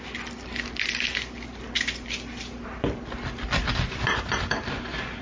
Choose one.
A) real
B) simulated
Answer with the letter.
A